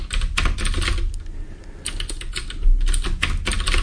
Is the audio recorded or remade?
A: recorded